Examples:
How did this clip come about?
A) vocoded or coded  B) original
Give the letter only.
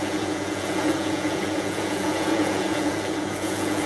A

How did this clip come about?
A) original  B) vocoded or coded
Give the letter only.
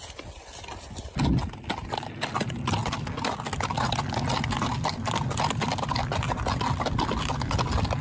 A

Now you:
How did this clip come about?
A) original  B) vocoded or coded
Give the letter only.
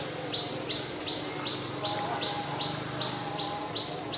A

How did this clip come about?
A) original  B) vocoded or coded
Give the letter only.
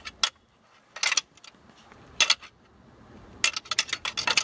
A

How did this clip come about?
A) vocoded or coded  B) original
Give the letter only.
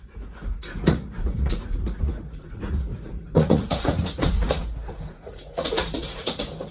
A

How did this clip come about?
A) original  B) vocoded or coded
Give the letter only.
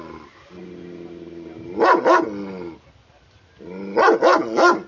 A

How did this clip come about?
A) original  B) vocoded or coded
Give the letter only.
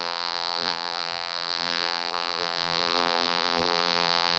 B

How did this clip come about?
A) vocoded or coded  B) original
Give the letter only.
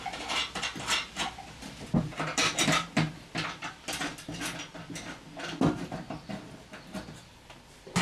B